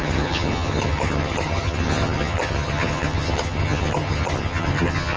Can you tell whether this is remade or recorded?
remade